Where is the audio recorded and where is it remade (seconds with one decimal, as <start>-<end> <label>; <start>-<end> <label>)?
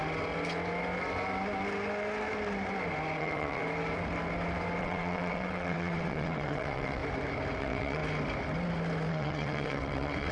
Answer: 0.0-3.2 recorded; 3.2-3.6 remade; 3.6-4.8 recorded; 4.8-7.0 remade; 7.0-7.6 recorded; 7.6-8.0 remade; 8.0-9.1 recorded; 9.1-10.3 remade